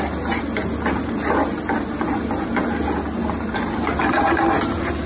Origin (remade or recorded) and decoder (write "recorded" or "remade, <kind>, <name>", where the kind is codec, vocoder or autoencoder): recorded